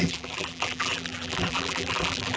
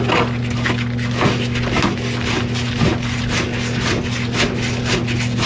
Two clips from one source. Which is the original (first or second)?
second